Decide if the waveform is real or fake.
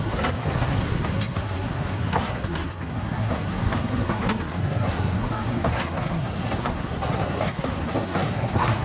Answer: fake